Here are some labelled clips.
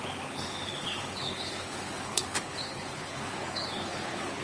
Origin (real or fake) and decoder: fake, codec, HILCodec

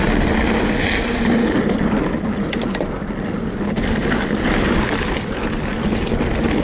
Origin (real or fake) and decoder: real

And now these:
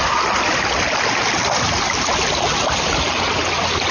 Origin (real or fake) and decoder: real